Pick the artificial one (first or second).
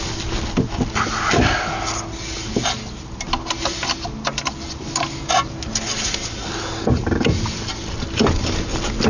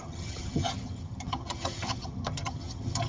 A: second